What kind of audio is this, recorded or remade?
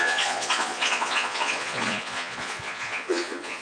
remade